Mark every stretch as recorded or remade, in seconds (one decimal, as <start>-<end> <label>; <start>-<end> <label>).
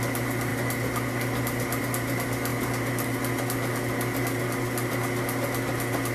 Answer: 0.0-6.1 recorded